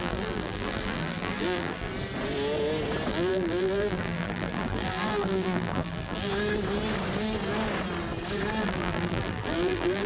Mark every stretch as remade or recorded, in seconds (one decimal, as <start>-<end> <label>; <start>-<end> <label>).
0.0-1.9 remade; 1.9-3.1 recorded; 3.1-6.3 remade; 6.3-8.6 recorded; 8.6-10.1 remade